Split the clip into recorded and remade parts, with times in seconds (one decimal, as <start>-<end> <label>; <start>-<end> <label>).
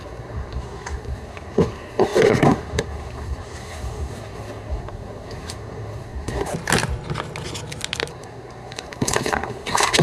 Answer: 0.0-6.5 remade; 6.5-8.1 recorded; 8.1-10.0 remade